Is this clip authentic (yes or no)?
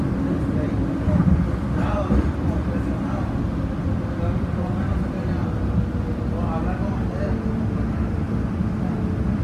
yes